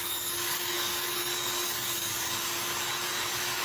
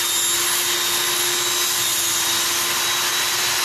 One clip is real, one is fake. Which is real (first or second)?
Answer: second